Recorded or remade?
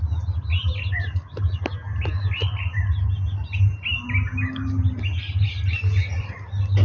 recorded